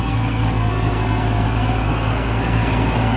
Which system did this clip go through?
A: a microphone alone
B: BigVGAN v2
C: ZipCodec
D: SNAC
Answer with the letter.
D